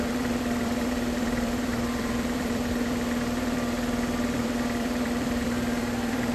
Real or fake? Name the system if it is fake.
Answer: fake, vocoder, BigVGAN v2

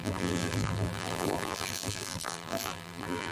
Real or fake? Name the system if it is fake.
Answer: fake, vocoder, BigVGAN v2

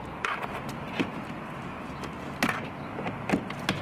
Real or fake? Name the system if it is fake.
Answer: real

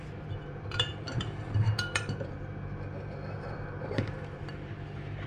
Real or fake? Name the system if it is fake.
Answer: fake, vocoder, BigVGAN v2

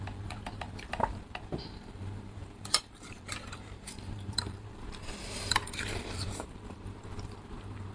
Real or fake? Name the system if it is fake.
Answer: fake, vocoder, BigVGAN v2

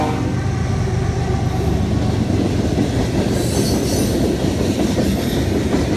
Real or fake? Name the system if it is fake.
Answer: real